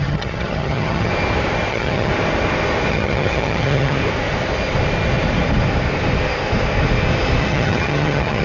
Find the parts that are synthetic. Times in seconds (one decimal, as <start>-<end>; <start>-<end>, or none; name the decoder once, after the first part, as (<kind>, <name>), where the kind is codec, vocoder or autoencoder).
0.0-1.1 (vocoder, HiFi-GAN); 1.7-2.1; 2.9-4.0; 7.4-8.4